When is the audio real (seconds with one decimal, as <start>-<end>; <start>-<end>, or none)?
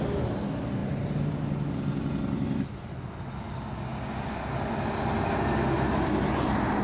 0.0-6.8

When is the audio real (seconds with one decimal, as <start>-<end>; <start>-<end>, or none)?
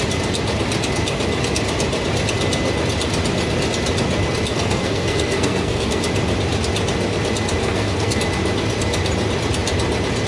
0.0-4.5; 6.0-7.6; 8.2-10.3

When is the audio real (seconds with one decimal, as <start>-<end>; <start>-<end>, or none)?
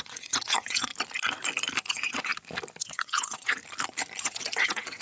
0.9-1.9; 2.3-2.8; 3.6-4.2